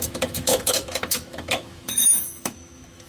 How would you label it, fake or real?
fake